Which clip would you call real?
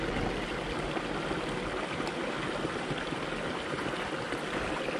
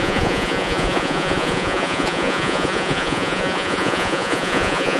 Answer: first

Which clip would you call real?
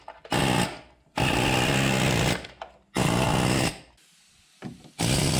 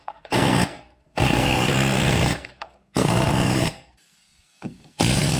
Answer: first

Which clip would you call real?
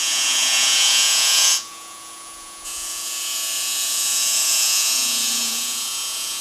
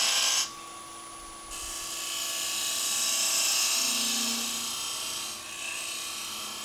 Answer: second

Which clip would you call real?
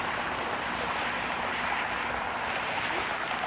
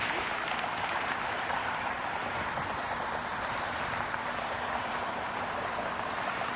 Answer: first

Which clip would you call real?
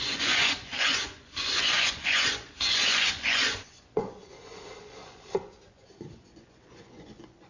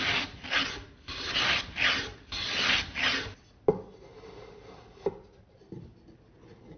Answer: second